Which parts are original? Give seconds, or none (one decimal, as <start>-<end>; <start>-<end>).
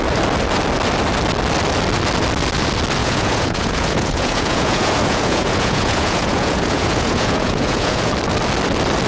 0.0-3.0; 8.1-9.1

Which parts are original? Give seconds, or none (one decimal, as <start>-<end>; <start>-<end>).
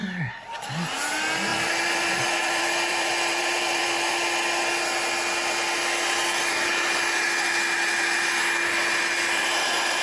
0.0-1.5; 4.1-10.0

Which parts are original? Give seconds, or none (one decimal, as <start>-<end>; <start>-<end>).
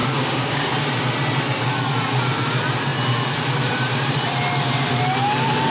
0.7-5.7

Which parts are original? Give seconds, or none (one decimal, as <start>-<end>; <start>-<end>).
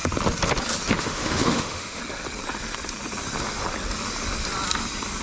0.0-1.0; 2.0-5.2